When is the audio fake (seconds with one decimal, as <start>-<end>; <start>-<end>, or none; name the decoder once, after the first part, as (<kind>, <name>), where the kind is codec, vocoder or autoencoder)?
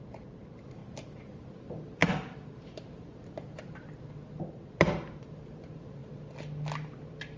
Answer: 0.0-0.8 (vocoder, BigVGAN v2); 1.3-6.0